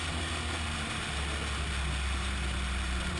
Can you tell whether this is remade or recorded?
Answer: recorded